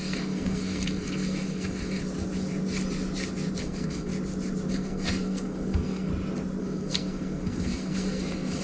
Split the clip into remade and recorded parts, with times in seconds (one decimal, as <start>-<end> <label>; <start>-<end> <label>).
0.0-2.0 remade; 2.0-3.6 recorded; 3.6-4.1 remade; 4.1-4.7 recorded; 4.7-6.1 remade; 6.1-6.6 recorded; 6.6-8.6 remade